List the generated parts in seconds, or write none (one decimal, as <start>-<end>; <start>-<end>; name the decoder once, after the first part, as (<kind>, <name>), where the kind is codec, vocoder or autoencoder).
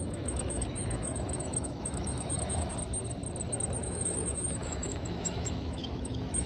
0.0-2.7 (autoencoder, DAC-VAE); 3.8-6.5